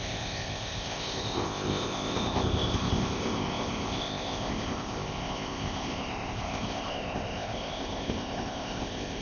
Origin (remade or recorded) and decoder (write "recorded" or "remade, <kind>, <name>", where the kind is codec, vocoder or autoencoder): remade, codec, ZipCodec